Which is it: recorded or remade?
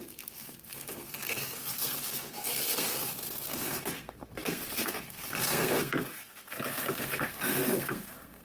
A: remade